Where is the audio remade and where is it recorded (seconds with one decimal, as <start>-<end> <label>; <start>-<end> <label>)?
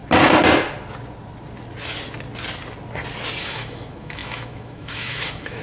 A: 0.0-3.4 recorded; 3.4-5.6 remade